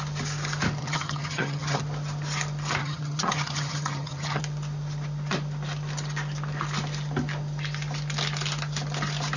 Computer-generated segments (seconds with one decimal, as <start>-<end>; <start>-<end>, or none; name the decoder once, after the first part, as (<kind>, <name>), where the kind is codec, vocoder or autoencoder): 0.8-1.8 (vocoder, HiFi-GAN); 2.8-4.4